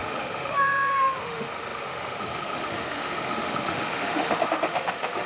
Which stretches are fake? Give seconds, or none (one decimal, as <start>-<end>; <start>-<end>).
0.0-5.3